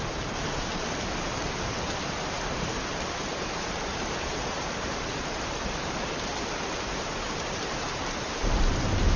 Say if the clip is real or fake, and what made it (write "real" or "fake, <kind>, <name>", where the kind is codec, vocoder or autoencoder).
fake, vocoder, BigVGAN v2